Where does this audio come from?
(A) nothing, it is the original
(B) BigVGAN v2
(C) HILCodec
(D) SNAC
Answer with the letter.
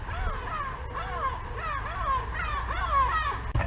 A